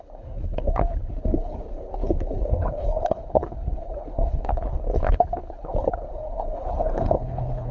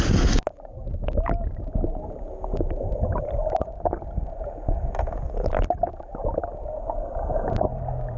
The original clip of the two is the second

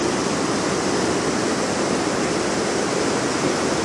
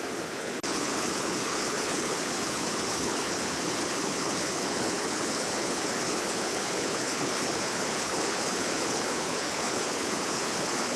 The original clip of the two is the first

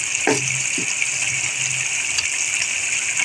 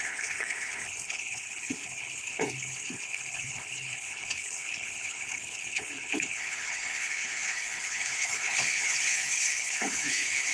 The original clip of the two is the first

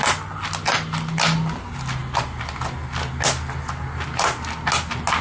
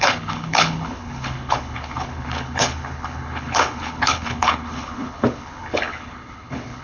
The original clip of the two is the first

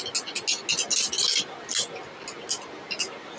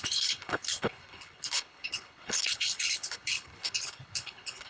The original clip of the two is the first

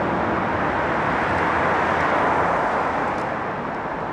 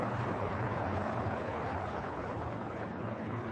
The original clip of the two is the first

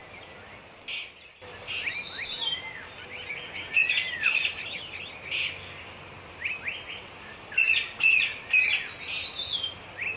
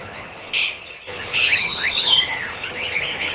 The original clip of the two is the first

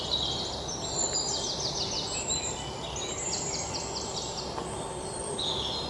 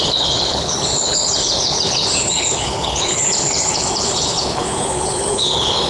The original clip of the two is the first